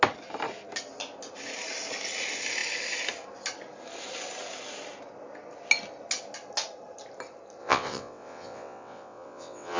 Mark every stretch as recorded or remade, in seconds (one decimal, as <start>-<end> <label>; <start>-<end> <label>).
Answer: 0.0-7.6 recorded; 7.6-9.8 remade